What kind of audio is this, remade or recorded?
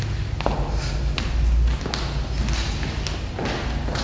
recorded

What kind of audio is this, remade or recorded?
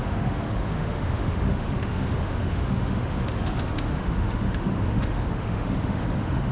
remade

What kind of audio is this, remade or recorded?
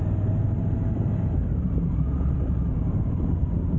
recorded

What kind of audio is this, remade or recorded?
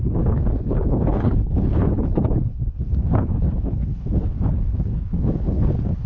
remade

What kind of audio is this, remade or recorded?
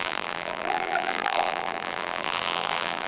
remade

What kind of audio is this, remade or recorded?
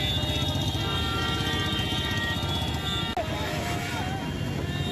recorded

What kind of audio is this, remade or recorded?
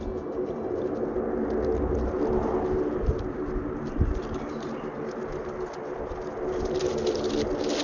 recorded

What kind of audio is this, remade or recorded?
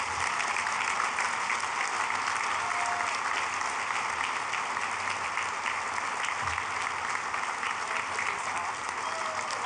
recorded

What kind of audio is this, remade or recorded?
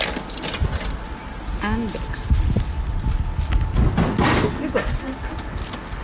recorded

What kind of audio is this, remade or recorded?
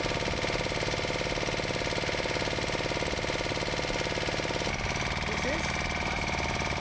recorded